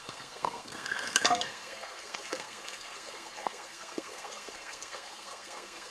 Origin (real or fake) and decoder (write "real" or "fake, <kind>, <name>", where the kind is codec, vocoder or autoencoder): fake, codec, SNAC